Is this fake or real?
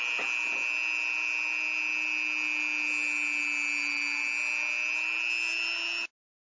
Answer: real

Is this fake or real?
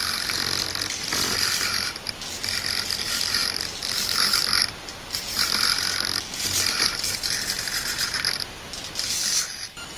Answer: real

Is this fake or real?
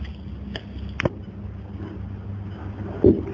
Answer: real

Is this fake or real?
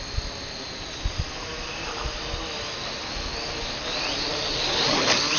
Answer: real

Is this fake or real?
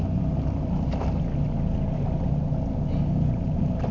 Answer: real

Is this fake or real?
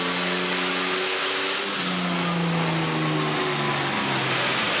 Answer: real